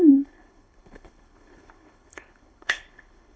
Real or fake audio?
fake